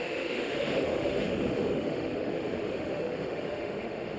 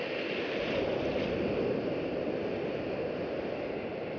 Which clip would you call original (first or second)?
second